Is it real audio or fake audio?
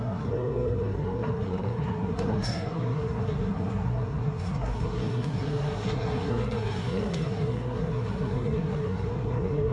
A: fake